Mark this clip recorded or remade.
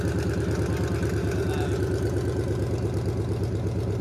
recorded